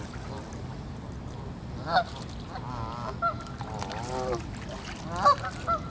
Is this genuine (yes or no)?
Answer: yes